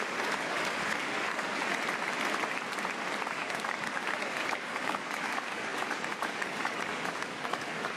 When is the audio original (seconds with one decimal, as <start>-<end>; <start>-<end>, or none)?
1.6-3.3